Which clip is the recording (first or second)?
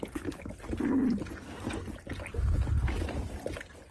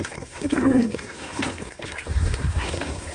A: first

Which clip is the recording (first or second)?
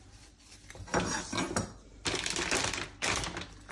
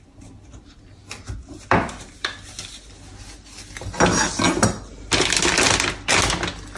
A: second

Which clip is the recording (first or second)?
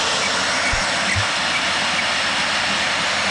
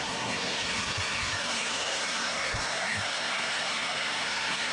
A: first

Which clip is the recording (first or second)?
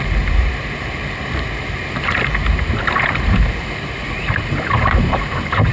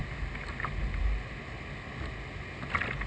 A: second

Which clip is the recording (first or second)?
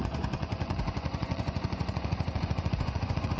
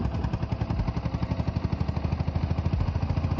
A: second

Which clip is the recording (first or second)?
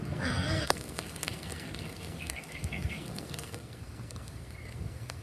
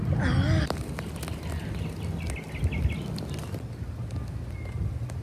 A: second